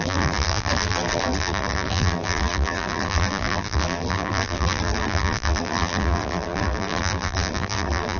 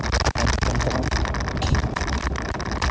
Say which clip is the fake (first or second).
first